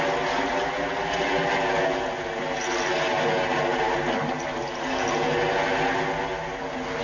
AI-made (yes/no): no